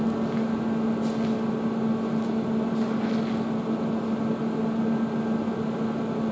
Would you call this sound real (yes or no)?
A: yes